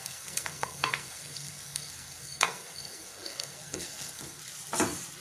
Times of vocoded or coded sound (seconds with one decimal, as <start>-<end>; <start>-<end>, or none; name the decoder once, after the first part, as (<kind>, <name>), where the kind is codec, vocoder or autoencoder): 0.0-4.4 (codec, SNAC)